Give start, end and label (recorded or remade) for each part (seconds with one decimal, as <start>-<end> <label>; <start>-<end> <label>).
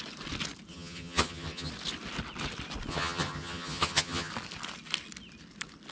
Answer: 0.0-0.7 recorded; 0.7-1.7 remade; 1.7-2.9 recorded; 2.9-4.3 remade; 4.3-5.9 recorded